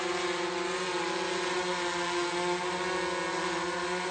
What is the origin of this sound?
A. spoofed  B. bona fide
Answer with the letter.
B